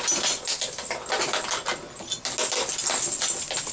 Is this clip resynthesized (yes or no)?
no